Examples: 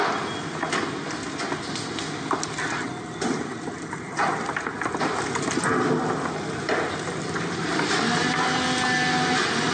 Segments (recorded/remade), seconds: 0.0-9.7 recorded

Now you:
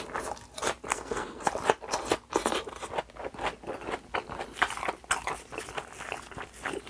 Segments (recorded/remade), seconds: 0.0-0.9 recorded; 0.9-1.4 remade; 1.4-6.9 recorded

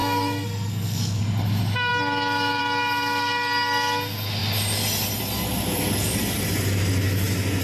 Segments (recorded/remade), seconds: 0.0-1.2 remade; 1.2-7.6 recorded